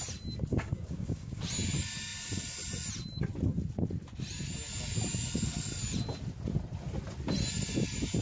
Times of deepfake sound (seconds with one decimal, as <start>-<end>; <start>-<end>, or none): 0.5-1.4